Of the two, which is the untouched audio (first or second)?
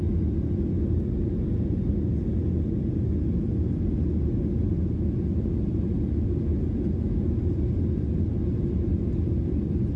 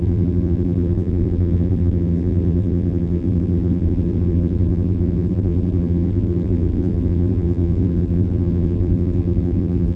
first